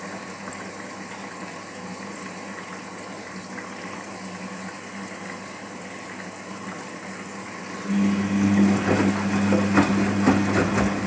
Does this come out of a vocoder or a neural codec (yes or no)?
no